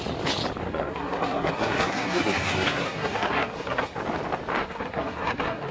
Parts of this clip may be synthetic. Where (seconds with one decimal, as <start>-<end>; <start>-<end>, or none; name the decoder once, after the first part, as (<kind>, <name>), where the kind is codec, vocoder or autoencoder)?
0.6-4.0 (codec, SNAC); 4.6-5.7